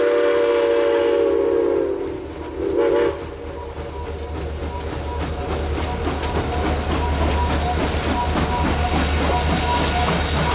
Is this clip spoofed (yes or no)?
no